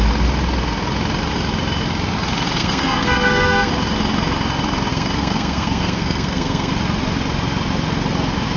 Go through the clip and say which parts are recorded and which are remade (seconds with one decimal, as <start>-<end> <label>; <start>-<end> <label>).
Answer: 0.0-2.6 recorded; 2.6-3.7 remade; 3.7-4.9 recorded; 4.9-6.7 remade; 6.7-8.6 recorded